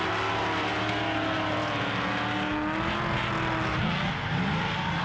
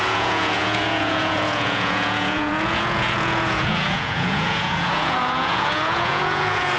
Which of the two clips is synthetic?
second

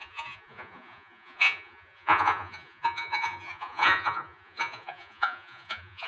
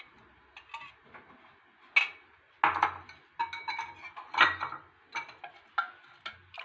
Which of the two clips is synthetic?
first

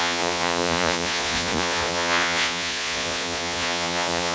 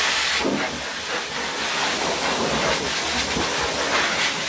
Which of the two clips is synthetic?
first